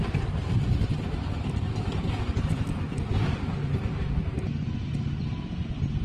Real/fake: real